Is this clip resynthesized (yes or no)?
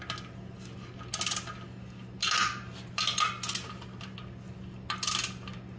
no